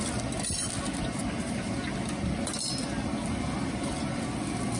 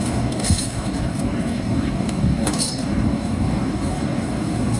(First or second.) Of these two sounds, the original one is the first